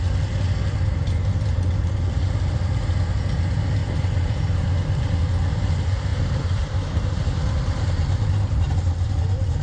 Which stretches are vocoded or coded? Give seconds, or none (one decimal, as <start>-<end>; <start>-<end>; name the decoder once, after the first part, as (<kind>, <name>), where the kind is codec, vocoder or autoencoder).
3.8-4.7 (vocoder, BigVGAN v2); 6.1-8.7